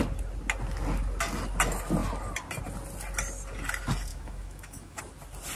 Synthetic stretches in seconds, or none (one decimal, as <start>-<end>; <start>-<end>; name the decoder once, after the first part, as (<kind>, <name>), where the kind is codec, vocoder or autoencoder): 4.1-5.0 (autoencoder, DAC-VAE)